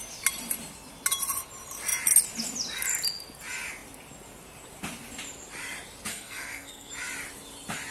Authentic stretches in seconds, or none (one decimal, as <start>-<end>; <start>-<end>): 0.0-6.1; 6.9-7.9